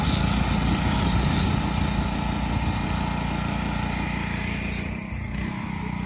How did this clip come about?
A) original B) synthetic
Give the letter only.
A